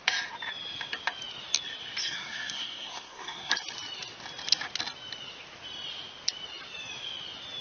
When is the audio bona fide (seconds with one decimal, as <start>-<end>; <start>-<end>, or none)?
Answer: 0.0-2.0; 3.5-7.6